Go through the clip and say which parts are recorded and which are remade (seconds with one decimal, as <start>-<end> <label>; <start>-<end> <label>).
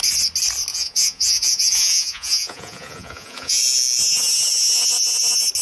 0.0-0.7 recorded; 0.7-3.6 remade; 3.6-5.6 recorded